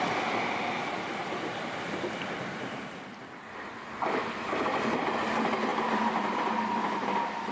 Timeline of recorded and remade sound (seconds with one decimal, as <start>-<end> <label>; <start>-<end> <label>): 0.0-1.2 recorded; 1.2-3.7 remade; 3.7-7.5 recorded